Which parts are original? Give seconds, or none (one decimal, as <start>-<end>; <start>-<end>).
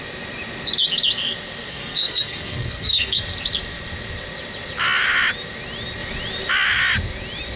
0.0-1.7; 3.2-7.6